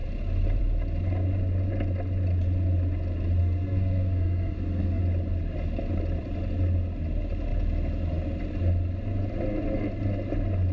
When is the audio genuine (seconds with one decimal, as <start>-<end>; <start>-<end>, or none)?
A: 0.0-3.4; 5.0-10.7

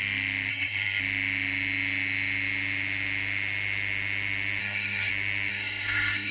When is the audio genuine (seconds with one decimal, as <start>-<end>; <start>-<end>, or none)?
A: 0.0-0.5; 1.0-4.6; 5.1-5.5

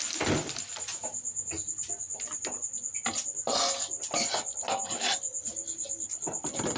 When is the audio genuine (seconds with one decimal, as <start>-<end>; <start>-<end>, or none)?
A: 0.0-0.9; 1.5-6.8

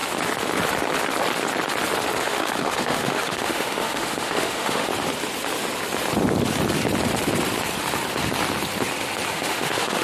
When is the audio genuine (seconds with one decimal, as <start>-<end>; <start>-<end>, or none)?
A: 0.0-2.2; 4.9-9.3

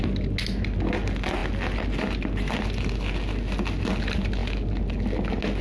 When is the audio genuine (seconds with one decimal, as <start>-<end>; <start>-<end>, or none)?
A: 0.0-5.6

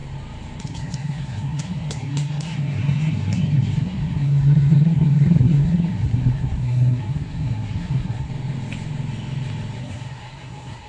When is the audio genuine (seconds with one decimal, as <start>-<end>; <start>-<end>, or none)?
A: 0.0-0.6; 8.3-9.8

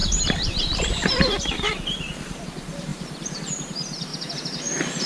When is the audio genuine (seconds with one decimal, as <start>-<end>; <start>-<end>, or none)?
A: 4.1-5.1